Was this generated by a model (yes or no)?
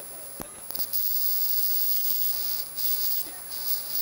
no